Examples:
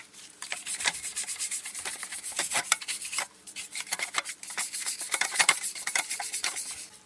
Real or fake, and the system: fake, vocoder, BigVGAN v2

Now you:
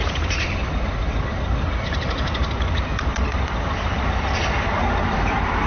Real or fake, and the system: real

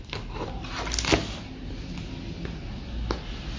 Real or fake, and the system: real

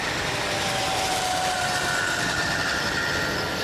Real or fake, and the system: fake, vocoder, BigVGAN v2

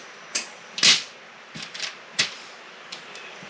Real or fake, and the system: real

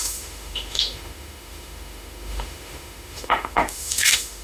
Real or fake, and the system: fake, autoencoder, DAC-VAE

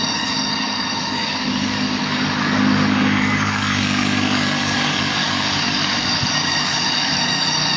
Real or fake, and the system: fake, codec, DAC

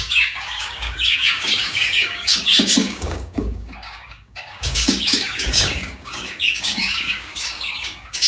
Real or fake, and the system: fake, codec, DAC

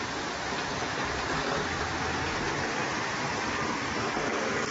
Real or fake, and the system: real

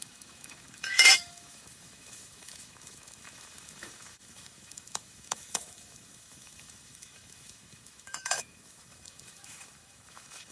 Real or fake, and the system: fake, autoencoder, DAC-VAE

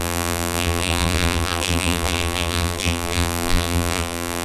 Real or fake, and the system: fake, vocoder, BigVGAN v2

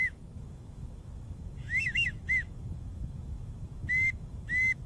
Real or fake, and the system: fake, autoencoder, DAC-VAE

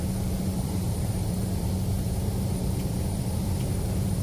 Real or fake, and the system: fake, vocoder, BigVGAN v2